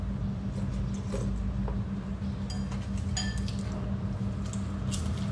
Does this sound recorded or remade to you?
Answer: recorded